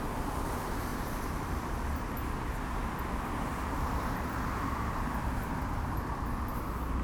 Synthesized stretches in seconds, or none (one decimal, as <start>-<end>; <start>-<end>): 0.9-1.6; 3.5-6.6